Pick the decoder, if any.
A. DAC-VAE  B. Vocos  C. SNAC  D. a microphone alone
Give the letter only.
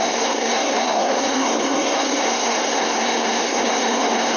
C